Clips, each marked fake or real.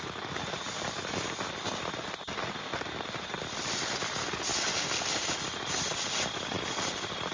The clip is real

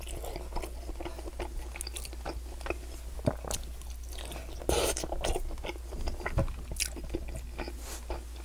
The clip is real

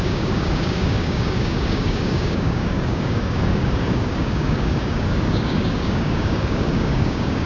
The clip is fake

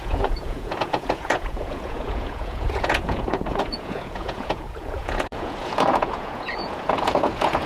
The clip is fake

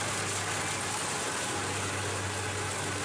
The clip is real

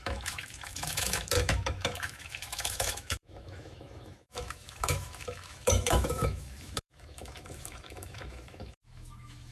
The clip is fake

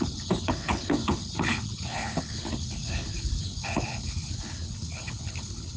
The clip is fake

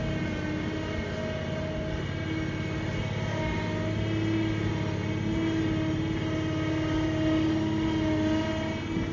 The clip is real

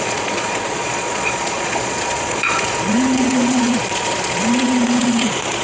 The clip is fake